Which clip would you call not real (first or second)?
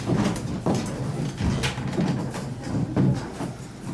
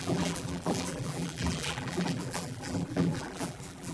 second